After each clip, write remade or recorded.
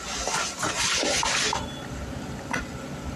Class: recorded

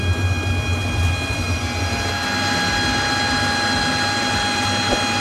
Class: recorded